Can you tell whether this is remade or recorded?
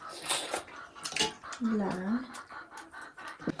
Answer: recorded